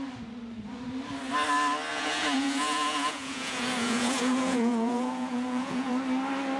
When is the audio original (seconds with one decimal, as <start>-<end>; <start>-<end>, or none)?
0.0-1.9; 5.9-6.6